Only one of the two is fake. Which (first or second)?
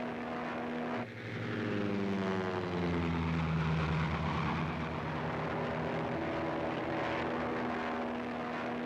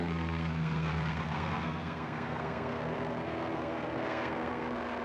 second